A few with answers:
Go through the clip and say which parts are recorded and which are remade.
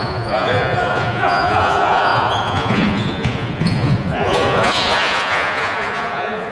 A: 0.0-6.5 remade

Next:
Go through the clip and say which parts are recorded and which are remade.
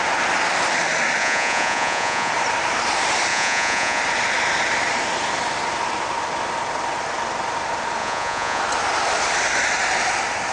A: 0.0-1.2 recorded; 1.2-2.3 remade; 2.3-3.3 recorded; 3.3-4.0 remade; 4.0-8.0 recorded; 8.0-8.6 remade; 8.6-10.5 recorded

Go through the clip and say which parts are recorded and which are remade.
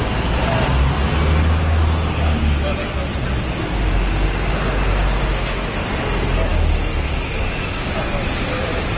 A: 0.0-9.0 recorded